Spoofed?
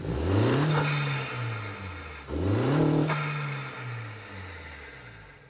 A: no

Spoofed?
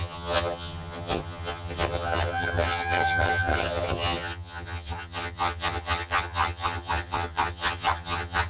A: yes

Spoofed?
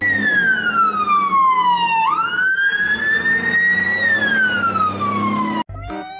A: no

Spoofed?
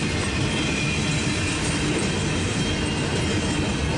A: no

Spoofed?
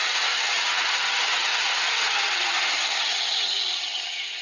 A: yes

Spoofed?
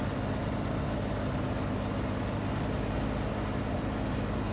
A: no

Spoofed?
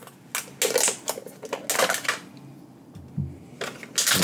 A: no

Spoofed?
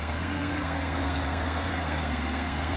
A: yes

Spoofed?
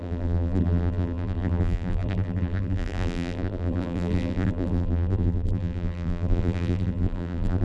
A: yes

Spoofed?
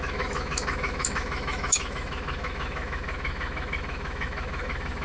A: yes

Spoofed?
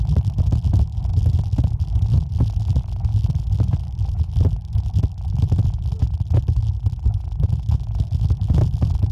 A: no